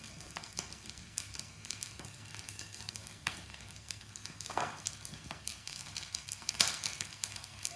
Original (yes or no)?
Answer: no